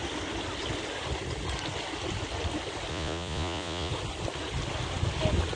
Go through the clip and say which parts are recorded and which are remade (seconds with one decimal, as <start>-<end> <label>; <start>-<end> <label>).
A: 0.0-2.9 recorded; 2.9-3.9 remade; 3.9-5.6 recorded